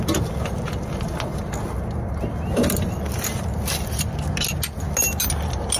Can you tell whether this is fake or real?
real